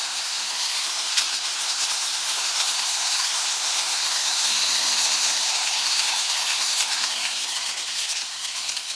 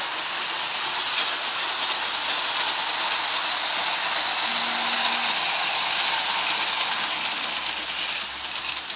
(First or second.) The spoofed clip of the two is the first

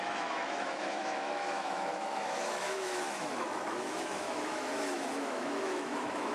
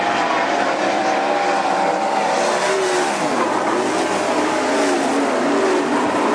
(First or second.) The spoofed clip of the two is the first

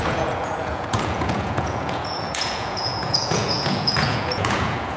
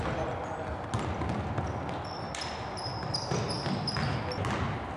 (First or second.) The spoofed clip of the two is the first